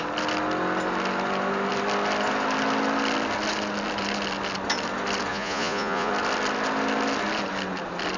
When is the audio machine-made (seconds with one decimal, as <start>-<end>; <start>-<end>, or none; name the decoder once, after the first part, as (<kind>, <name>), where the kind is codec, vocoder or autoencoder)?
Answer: 5.3-6.1 (vocoder, Vocos)